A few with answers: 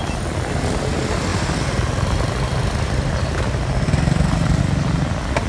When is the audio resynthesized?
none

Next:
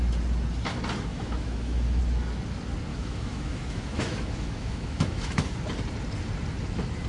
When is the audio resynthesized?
1.1-2.0 (autoencoder, DAC-VAE); 2.9-5.5

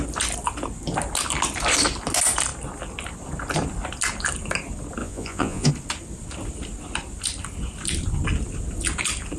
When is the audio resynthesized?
5.0-5.7 (vocoder, Vocos)